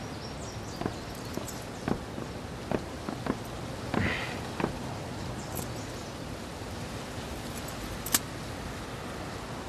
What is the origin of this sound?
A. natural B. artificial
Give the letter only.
A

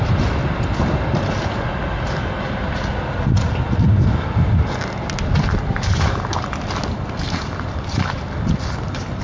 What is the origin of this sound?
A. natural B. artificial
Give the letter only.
A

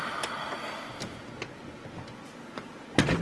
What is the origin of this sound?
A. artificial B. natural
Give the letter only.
B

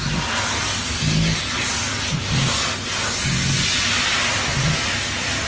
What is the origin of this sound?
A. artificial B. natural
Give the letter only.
B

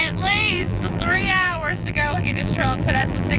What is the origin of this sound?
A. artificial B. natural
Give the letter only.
A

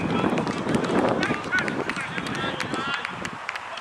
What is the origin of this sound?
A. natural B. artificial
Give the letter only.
A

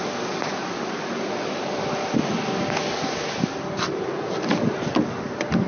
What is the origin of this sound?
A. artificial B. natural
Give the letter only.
B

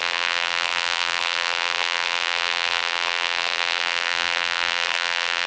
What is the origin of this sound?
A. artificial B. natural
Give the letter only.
A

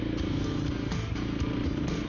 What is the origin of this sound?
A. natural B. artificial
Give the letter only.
B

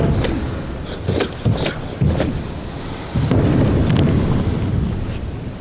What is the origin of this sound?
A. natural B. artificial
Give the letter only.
A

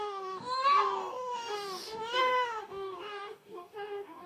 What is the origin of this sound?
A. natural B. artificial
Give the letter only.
B